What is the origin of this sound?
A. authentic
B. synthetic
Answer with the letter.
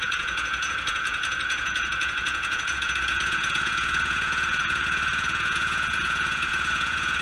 B